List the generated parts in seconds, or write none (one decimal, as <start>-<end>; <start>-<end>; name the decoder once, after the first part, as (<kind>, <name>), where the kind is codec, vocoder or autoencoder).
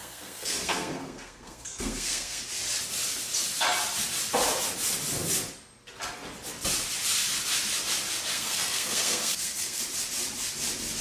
0.0-2.4 (codec, SNAC); 8.3-9.8